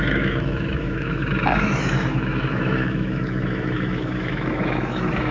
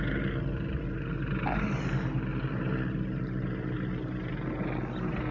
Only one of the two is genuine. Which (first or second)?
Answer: second